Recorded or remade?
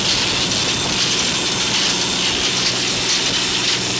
recorded